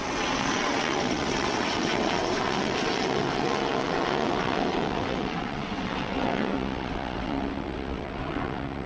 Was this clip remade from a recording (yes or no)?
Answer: yes